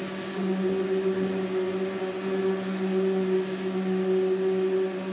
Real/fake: real